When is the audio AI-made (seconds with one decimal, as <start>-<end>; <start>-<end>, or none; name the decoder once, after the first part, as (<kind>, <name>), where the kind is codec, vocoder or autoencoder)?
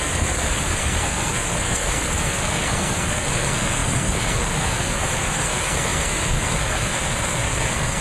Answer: 0.0-8.0 (codec, SNAC)